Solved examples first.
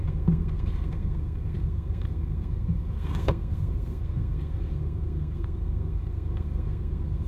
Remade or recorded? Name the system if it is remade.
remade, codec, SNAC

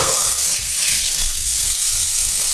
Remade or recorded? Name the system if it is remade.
remade, codec, SNAC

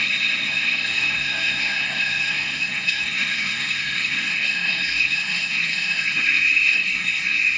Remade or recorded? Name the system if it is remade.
remade, codec, SNAC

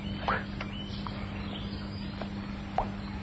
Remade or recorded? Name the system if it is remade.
recorded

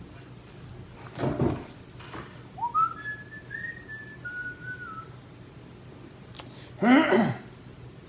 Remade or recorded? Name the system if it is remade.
recorded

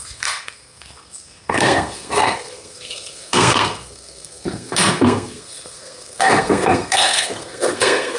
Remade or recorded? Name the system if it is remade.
remade, codec, SNAC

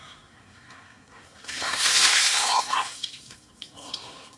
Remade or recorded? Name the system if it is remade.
remade, codec, SNAC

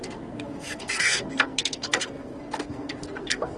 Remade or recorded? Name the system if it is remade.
remade, codec, SNAC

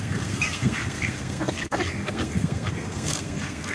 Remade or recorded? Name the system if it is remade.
remade, codec, SNAC